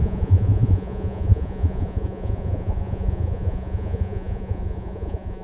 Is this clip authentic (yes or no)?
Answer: no